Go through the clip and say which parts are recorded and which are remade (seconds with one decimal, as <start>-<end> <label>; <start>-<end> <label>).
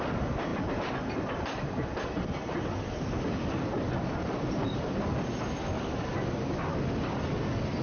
0.0-7.8 recorded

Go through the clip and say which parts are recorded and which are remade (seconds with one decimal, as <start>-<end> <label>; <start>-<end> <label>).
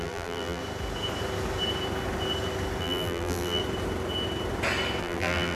0.0-0.6 remade; 0.6-2.8 recorded; 2.8-3.6 remade; 3.6-5.0 recorded; 5.0-5.5 remade